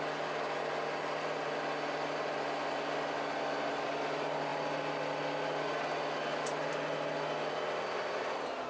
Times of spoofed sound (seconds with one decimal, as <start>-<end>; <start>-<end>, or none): none